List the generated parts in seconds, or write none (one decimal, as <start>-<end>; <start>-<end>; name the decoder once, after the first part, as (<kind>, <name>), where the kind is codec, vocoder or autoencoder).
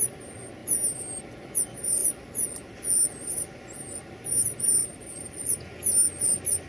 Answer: 4.8-5.6 (vocoder, BigVGAN v2)